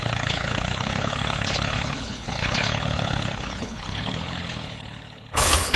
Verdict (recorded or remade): remade